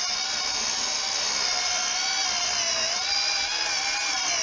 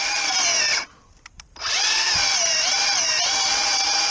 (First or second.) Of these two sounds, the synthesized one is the second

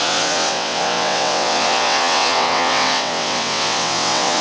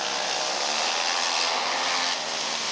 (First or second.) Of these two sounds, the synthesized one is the first